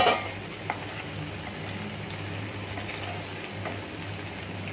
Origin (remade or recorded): recorded